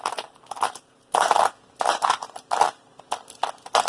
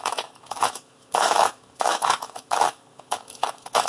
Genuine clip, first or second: first